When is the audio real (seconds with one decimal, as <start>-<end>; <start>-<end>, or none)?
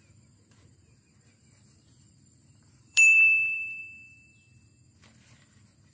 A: 0.0-1.4; 3.8-5.9